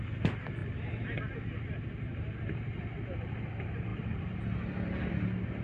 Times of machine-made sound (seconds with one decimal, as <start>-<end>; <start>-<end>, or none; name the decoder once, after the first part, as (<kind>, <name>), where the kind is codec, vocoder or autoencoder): none